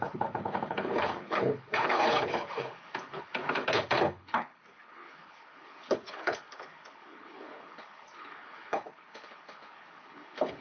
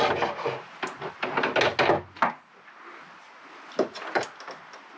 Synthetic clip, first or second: first